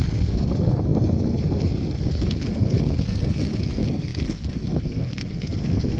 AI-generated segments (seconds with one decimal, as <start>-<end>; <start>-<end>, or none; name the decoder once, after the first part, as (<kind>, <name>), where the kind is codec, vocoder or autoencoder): 0.0-6.0 (codec, SNAC)